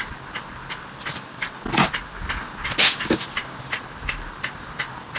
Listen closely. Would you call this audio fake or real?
real